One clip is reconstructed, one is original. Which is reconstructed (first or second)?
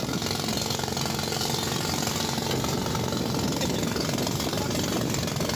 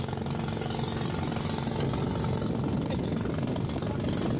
first